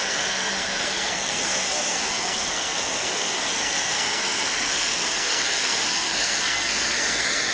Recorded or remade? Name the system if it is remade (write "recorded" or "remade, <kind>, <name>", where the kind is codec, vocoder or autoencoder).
remade, codec, SNAC